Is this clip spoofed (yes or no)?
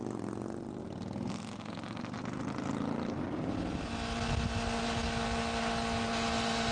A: no